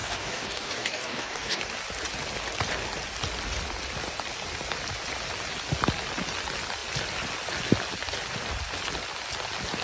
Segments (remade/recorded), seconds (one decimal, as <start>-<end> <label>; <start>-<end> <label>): 0.0-1.6 remade; 1.6-9.8 recorded